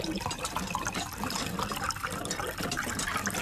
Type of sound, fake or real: real